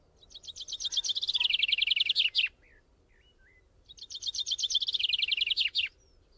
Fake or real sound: real